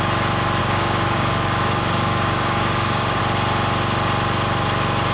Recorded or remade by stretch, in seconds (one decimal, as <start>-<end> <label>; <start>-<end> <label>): 0.0-0.6 recorded; 0.6-3.2 remade; 3.2-5.1 recorded